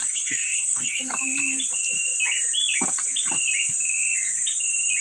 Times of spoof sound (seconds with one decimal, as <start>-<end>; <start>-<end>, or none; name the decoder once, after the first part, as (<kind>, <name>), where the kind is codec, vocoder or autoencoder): 0.0-1.0 (codec, SNAC)